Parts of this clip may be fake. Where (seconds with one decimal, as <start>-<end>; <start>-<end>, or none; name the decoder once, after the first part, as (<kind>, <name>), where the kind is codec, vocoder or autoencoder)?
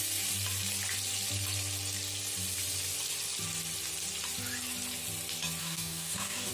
5.6-6.5 (codec, DAC)